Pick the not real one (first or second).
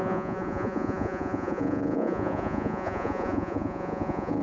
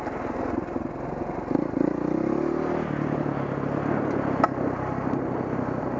first